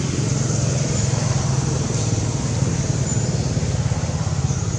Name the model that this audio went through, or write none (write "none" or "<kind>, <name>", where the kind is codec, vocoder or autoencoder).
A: none